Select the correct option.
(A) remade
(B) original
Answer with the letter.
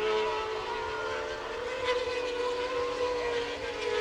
B